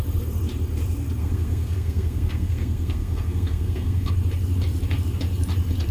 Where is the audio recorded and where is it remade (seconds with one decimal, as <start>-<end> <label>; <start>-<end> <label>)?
0.0-1.2 recorded; 1.2-4.1 remade; 4.1-5.9 recorded